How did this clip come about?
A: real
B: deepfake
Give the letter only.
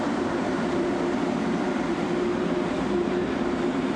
B